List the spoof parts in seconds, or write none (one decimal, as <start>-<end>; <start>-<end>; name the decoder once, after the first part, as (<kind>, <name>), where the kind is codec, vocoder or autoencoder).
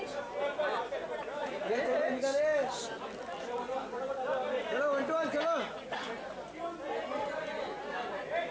1.4-2.1 (vocoder, Vocos)